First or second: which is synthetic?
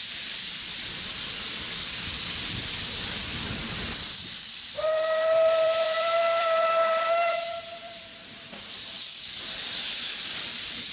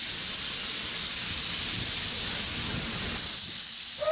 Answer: first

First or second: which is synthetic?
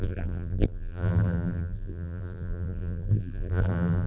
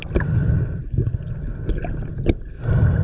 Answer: first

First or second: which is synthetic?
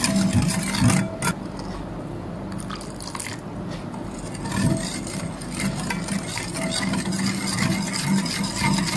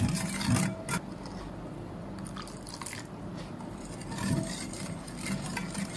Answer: second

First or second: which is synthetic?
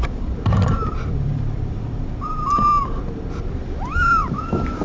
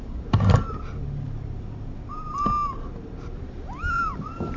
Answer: first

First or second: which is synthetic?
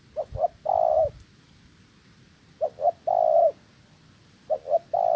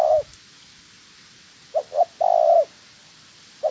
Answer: first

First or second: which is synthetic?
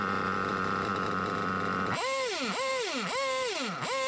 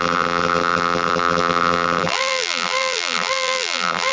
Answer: second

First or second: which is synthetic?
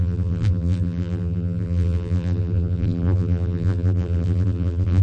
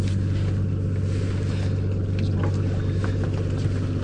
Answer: first